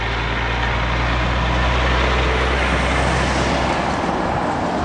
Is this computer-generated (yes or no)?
no